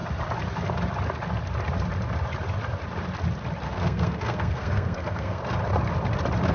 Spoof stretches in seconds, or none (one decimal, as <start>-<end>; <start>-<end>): 3.7-5.4